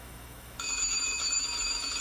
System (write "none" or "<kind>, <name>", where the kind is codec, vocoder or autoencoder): autoencoder, DAC-VAE